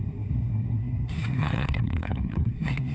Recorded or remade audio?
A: remade